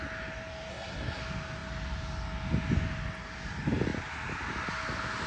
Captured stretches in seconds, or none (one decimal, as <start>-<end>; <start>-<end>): 0.0-0.7; 1.2-5.3